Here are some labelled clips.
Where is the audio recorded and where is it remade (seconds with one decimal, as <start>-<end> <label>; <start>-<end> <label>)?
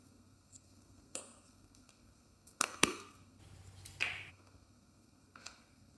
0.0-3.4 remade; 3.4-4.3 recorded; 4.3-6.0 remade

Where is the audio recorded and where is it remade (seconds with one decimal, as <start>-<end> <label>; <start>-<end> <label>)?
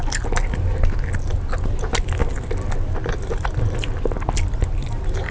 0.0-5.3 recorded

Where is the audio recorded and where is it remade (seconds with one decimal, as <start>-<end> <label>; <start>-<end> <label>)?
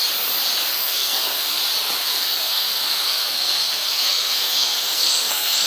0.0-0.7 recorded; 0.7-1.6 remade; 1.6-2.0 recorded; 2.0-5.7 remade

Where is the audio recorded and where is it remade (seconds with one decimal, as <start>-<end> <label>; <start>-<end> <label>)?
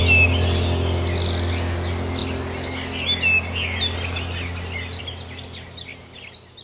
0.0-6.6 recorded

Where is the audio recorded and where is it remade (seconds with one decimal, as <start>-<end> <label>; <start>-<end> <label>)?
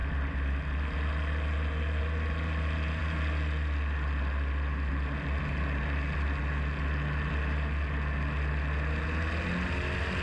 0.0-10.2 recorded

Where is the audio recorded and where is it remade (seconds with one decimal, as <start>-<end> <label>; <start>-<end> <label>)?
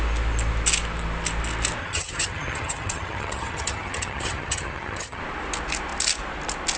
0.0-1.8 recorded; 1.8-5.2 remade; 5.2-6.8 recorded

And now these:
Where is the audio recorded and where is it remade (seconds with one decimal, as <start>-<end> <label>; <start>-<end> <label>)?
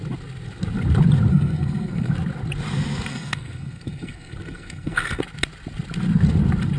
0.0-1.3 recorded; 1.3-2.1 remade; 2.1-3.1 recorded; 3.1-5.2 remade; 5.2-6.8 recorded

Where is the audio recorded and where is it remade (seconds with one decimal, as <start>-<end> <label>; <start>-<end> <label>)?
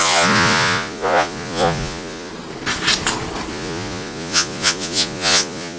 0.0-2.3 remade; 2.3-3.5 recorded; 3.5-5.8 remade